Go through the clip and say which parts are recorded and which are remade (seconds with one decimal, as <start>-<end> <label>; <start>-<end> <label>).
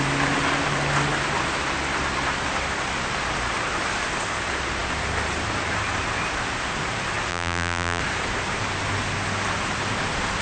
0.0-7.3 recorded; 7.3-8.0 remade; 8.0-10.4 recorded